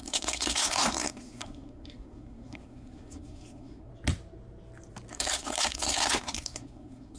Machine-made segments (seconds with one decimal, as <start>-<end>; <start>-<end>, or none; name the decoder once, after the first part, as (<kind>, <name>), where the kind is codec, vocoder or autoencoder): 0.0-3.9 (codec, SNAC); 5.1-7.2